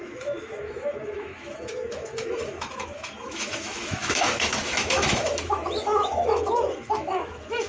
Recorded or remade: remade